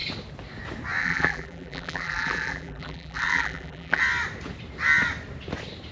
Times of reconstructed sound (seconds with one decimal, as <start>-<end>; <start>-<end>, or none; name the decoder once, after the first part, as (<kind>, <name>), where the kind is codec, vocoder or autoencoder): 1.0-4.0 (vocoder, BigVGAN v2)